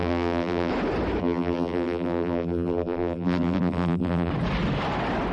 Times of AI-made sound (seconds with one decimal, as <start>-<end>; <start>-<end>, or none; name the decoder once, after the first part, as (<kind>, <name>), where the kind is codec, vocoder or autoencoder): 0.0-0.7 (vocoder, BigVGAN v2); 1.2-4.3